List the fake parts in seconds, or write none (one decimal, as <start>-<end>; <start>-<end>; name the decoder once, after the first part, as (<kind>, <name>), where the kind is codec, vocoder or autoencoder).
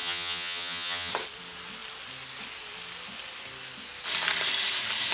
0.0-1.1 (vocoder, HiFi-GAN)